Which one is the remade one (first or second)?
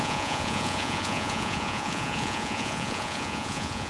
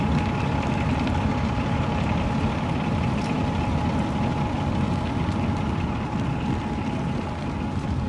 first